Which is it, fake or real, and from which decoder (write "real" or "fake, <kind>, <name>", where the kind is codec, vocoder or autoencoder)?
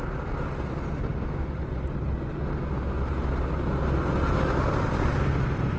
real